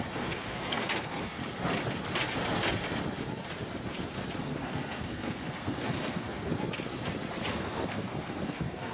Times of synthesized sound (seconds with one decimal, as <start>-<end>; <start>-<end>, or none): 0.0-1.4; 4.4-6.5; 7.5-8.9